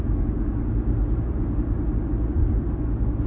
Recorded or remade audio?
recorded